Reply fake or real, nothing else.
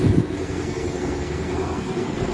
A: fake